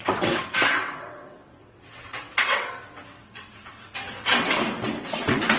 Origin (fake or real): fake